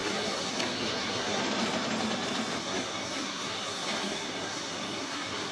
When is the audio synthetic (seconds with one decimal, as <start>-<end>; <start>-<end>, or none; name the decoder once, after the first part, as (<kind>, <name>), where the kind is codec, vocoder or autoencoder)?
0.0-1.4 (codec, SNAC); 2.6-5.5